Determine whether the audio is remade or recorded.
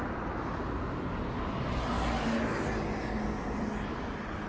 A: recorded